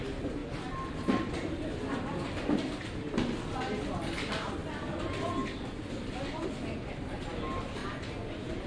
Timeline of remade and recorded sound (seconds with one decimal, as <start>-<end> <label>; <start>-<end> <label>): 0.0-8.7 recorded